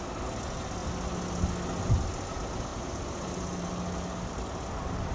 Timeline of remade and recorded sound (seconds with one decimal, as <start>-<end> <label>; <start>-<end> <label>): 0.0-2.7 recorded; 2.7-3.7 remade; 3.7-5.1 recorded